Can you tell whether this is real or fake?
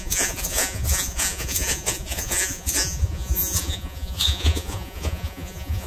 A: fake